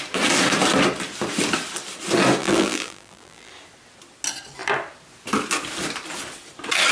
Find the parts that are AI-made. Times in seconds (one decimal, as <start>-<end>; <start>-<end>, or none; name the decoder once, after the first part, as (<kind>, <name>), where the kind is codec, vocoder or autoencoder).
2.4-3.5 (vocoder, BigVGAN v2)